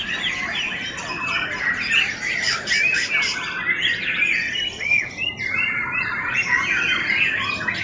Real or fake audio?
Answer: real